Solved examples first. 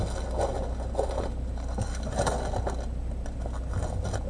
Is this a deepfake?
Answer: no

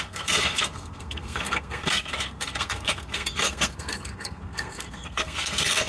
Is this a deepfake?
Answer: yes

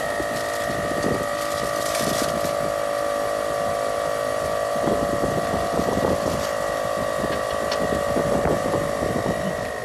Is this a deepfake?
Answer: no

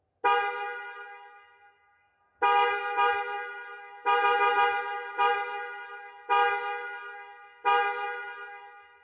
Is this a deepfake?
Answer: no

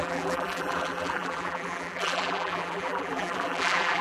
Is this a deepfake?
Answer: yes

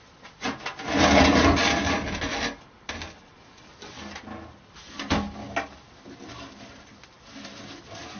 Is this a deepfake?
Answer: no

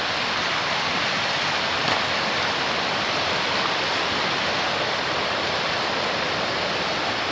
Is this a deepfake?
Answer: no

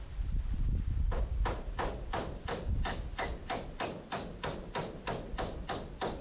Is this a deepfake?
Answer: no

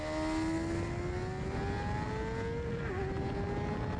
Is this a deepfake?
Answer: no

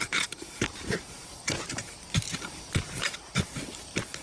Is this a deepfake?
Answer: yes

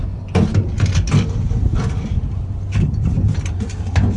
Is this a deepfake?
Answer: no